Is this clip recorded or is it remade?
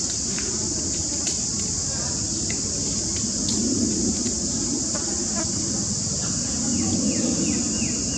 recorded